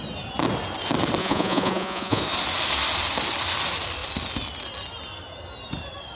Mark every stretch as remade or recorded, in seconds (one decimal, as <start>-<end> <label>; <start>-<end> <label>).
0.0-1.2 recorded; 1.2-2.2 remade; 2.2-6.2 recorded